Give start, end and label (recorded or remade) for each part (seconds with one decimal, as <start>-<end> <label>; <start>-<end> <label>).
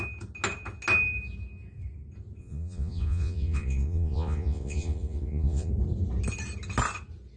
0.0-2.4 recorded; 2.4-5.7 remade; 5.7-7.4 recorded